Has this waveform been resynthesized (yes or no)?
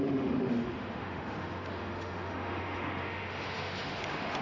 yes